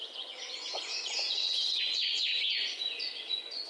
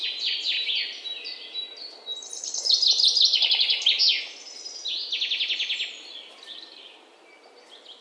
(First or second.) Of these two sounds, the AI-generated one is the first